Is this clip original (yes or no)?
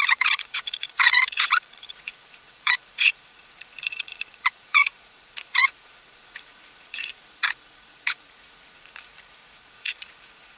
no